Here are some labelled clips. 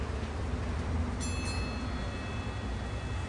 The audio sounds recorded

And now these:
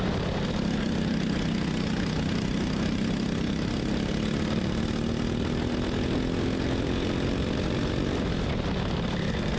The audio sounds recorded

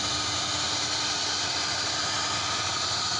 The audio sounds recorded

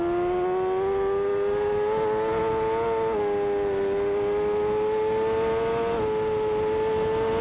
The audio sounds recorded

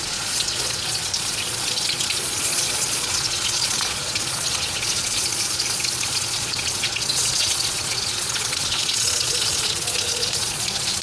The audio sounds remade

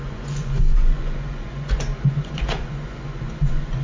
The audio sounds remade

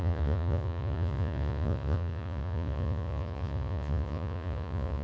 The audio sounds remade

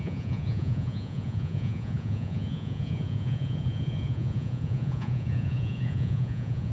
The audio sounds remade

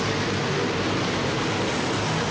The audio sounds recorded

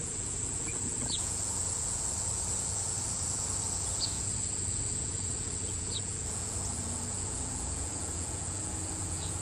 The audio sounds remade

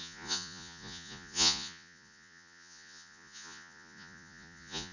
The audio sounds remade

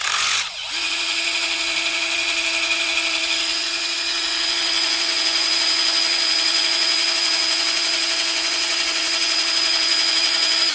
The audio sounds remade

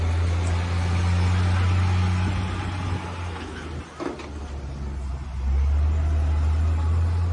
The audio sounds recorded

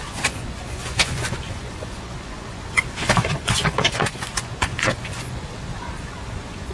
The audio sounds remade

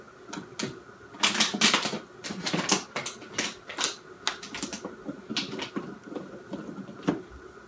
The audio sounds recorded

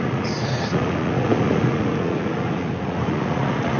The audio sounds remade